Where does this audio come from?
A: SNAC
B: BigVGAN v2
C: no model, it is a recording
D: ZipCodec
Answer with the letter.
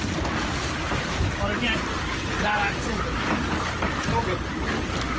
C